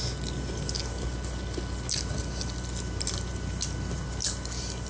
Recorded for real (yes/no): yes